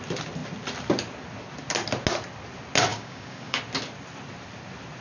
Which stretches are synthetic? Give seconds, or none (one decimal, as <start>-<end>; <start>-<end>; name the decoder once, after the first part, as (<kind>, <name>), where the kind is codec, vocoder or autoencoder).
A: 2.9-3.6 (codec, DAC)